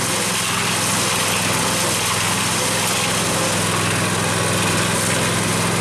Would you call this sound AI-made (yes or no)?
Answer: no